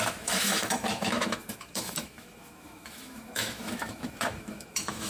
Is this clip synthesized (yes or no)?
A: yes